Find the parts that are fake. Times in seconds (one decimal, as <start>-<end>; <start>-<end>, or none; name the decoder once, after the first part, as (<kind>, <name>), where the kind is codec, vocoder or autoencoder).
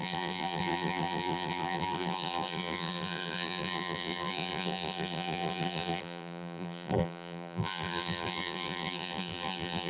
0.0-9.9 (vocoder, BigVGAN v2)